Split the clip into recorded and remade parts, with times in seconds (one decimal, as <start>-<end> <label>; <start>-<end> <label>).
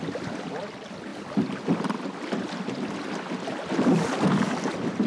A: 0.0-5.1 recorded